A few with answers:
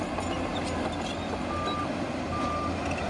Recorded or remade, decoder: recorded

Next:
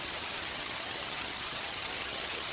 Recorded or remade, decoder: remade, vocoder, HiFi-GAN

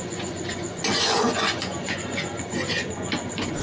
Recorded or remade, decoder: remade, vocoder, Vocos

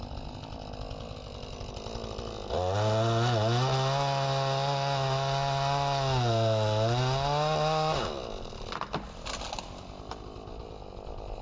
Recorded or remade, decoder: recorded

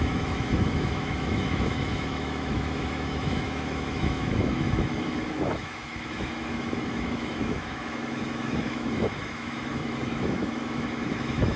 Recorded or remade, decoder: remade, autoencoder, DAC-VAE